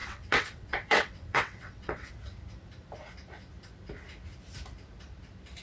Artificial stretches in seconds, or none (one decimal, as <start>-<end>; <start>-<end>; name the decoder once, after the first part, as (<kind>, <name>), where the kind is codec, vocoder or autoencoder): 0.0-2.1 (vocoder, WaveNeXt)